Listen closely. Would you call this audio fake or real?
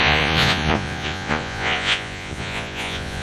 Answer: fake